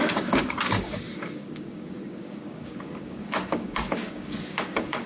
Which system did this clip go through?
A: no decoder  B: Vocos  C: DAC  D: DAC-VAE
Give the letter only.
C